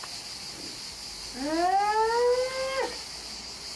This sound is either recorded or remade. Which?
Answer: recorded